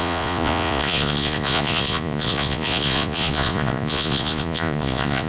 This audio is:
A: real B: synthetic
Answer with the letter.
B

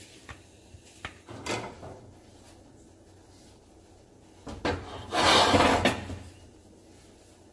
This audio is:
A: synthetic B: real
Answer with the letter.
B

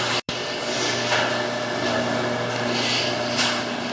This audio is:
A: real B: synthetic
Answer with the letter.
A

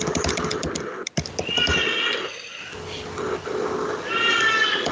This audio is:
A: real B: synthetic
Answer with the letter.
A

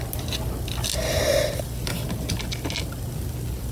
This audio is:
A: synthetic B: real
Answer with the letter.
B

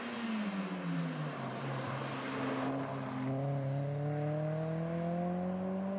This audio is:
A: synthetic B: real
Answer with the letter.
B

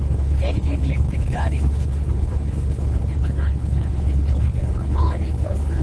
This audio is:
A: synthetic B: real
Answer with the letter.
A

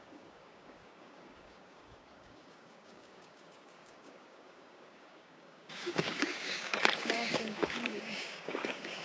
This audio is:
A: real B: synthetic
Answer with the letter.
B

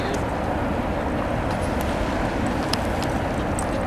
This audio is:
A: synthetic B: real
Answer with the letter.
B